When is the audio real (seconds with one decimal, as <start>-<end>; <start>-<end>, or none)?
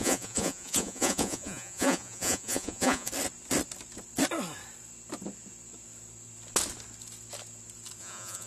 3.1-8.0